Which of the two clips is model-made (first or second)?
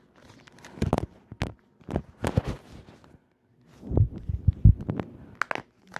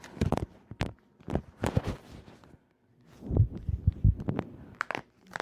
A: second